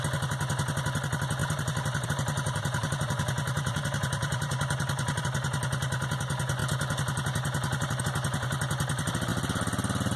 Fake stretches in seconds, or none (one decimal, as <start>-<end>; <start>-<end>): 1.4-5.2